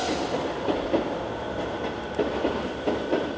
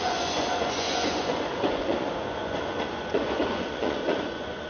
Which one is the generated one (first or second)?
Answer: second